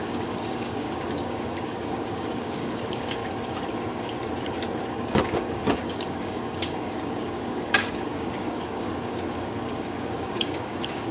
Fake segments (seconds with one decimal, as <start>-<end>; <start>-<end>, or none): 0.0-3.2; 4.9-11.1